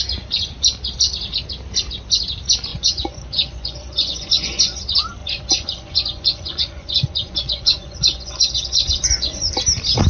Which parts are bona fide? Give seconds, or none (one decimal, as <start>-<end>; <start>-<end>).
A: 0.0-2.7; 4.8-5.2; 9.5-10.1